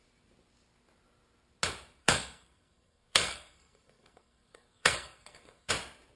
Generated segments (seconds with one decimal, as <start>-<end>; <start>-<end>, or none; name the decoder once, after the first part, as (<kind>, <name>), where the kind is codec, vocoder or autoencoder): 2.0-5.7 (codec, SNAC)